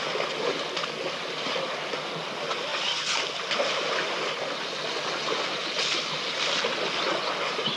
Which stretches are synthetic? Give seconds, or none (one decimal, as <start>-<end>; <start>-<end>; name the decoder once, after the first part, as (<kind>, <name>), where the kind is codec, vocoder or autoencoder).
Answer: none